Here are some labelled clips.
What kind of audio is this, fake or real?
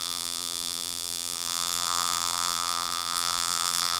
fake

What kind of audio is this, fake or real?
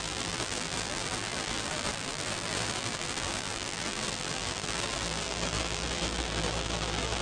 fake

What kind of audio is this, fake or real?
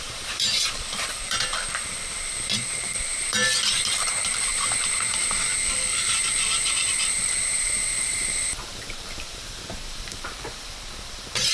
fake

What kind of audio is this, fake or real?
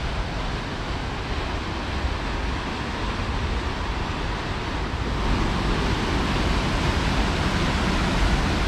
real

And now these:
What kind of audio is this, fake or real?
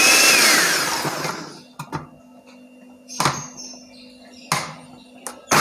real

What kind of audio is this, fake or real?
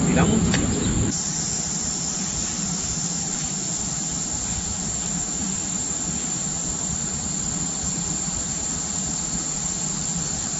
fake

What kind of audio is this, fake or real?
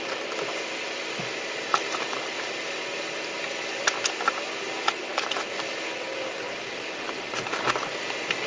real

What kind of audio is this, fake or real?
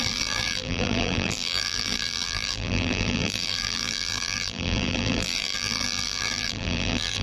fake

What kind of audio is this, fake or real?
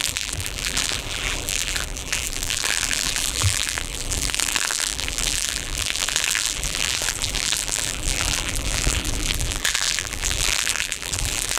fake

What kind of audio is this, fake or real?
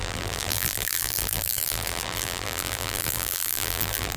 fake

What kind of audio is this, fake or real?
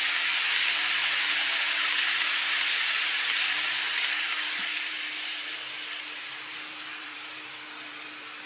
fake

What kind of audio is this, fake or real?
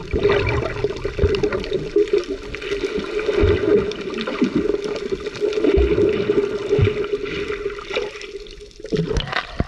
real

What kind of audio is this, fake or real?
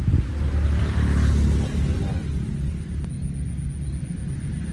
real